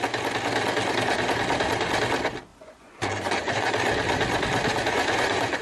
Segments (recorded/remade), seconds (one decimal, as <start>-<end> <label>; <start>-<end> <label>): 0.0-2.5 recorded; 2.5-3.7 remade; 3.7-4.7 recorded; 4.7-5.6 remade

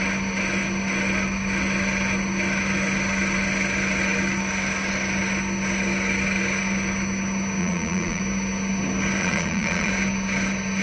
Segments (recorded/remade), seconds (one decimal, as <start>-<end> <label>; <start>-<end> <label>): 0.0-7.6 recorded; 7.6-8.2 remade; 8.2-9.2 recorded; 9.2-9.9 remade; 9.9-10.8 recorded

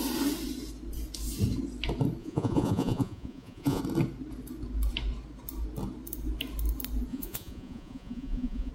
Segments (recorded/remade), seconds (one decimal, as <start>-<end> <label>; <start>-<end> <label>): 0.0-2.2 recorded; 2.2-3.8 remade; 3.8-7.1 recorded; 7.1-8.7 remade

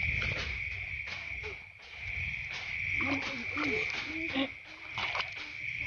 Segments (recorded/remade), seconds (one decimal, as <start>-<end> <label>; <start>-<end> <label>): 0.0-5.9 recorded

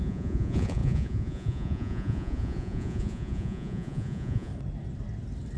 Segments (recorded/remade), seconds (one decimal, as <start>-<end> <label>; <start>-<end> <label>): 0.0-4.5 remade; 4.5-5.6 recorded